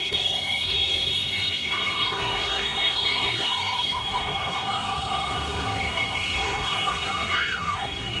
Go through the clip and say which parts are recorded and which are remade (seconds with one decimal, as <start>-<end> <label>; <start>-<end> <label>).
0.0-8.2 remade